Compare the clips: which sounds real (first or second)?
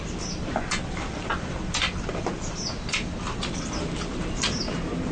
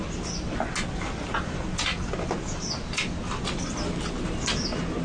second